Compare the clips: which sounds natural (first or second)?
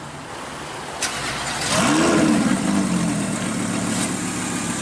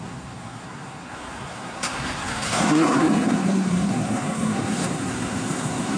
first